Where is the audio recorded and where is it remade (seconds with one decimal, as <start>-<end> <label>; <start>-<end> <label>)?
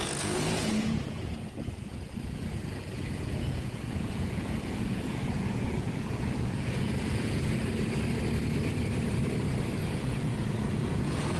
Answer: 0.0-7.6 remade; 7.6-9.8 recorded; 9.8-11.4 remade